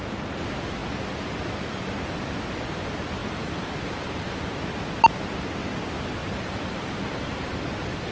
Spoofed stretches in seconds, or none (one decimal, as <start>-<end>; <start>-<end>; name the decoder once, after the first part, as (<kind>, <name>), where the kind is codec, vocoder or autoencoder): 3.2-4.6 (vocoder, BigVGAN v2); 6.2-7.6